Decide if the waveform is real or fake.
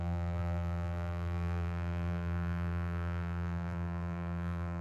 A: fake